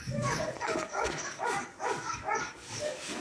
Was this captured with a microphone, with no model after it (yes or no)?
no